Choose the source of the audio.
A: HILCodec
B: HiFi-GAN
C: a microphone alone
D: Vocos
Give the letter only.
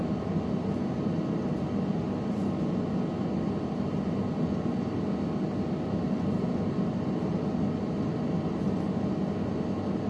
C